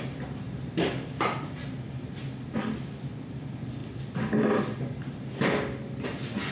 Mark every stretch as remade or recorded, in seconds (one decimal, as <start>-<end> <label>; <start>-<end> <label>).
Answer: 0.0-6.5 recorded